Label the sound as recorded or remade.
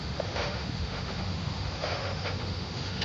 remade